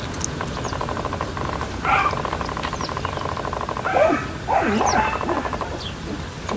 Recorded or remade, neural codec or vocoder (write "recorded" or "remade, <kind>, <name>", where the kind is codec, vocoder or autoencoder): recorded